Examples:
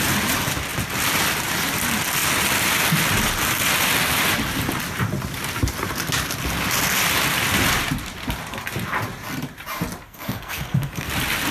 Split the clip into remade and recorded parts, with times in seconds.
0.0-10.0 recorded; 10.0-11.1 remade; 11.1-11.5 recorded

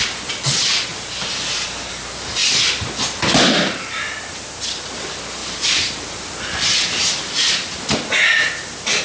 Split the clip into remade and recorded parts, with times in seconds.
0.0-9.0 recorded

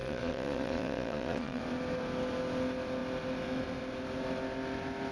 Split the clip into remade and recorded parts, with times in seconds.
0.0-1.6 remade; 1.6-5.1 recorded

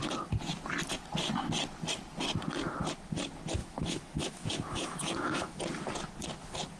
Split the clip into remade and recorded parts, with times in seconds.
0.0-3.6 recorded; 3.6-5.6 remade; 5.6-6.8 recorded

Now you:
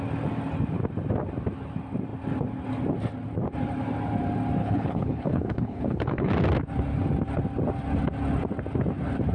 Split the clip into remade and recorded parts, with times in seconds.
0.0-4.6 recorded; 4.6-6.3 remade; 6.3-9.3 recorded

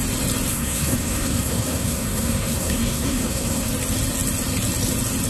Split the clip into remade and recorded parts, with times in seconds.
0.0-0.5 recorded; 0.5-3.7 remade; 3.7-5.3 recorded

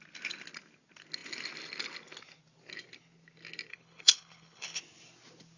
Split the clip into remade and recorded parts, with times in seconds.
0.0-3.7 recorded; 3.7-4.8 remade; 4.8-5.6 recorded